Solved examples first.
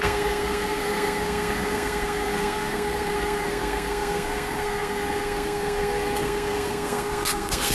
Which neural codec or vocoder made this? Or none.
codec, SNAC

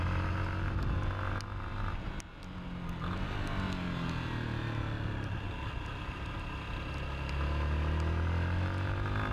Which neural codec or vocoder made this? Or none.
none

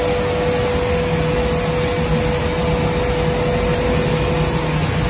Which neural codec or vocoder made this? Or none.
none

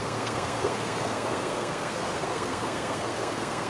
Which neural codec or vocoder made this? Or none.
codec, SNAC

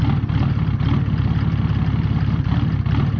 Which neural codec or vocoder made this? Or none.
none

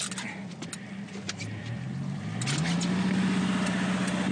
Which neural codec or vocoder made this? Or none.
none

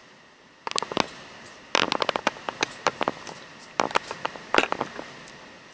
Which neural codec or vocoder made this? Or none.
none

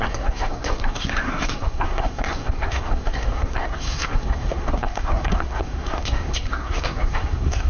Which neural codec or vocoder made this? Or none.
codec, SNAC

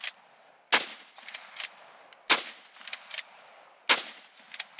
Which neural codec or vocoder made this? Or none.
none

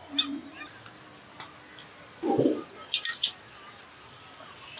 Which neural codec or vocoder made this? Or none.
none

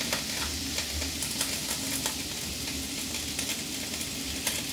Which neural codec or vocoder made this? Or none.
none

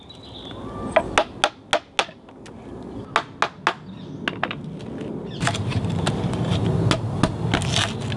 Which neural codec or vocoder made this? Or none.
none